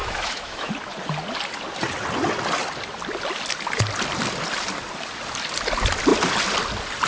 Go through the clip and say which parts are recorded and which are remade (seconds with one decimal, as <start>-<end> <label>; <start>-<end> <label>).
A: 0.0-0.7 remade; 0.7-7.1 recorded